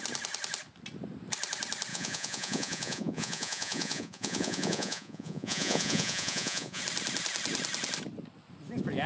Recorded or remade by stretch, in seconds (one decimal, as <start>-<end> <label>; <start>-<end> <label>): 0.0-1.9 recorded; 1.9-6.8 remade; 6.8-9.1 recorded